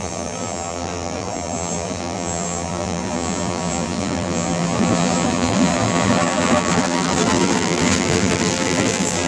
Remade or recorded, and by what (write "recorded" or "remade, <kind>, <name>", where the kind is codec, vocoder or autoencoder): remade, vocoder, BigVGAN v2